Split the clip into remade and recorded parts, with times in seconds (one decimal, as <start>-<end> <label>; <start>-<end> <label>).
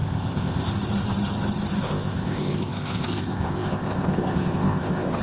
0.0-0.7 remade; 0.7-1.8 recorded; 1.8-5.2 remade